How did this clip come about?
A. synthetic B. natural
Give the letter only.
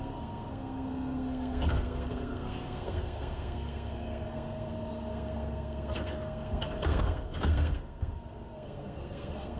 A